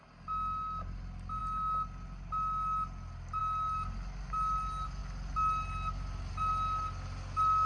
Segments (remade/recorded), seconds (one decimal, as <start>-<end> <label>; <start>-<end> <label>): 0.0-7.7 recorded